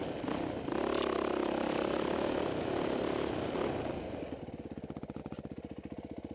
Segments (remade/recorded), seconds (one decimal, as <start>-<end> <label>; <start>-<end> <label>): 0.0-6.3 recorded